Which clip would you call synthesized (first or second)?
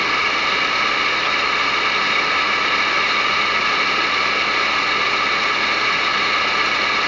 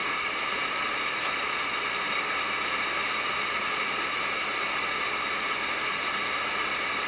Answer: second